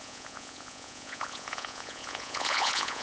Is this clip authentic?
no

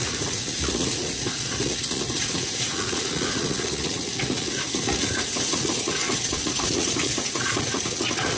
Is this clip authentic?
no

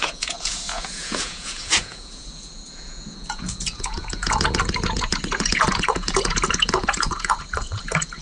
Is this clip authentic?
no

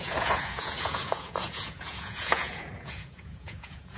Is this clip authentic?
no